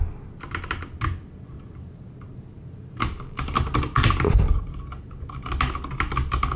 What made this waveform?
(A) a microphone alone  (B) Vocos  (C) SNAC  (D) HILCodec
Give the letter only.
A